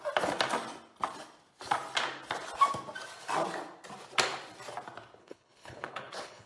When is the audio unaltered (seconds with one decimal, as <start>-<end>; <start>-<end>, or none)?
0.0-5.2